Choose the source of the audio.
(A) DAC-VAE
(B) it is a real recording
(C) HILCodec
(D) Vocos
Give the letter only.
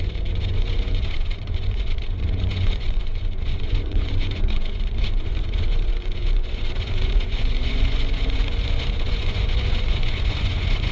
D